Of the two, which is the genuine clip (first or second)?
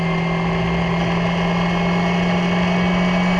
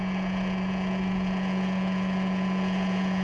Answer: first